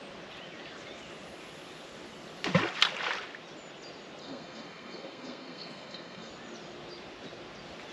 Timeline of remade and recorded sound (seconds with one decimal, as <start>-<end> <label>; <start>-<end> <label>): 0.0-4.2 recorded; 4.2-6.3 remade; 6.3-7.9 recorded